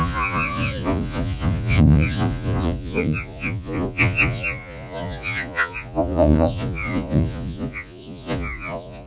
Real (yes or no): no